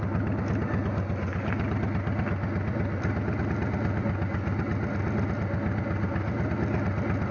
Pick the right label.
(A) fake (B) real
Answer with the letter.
B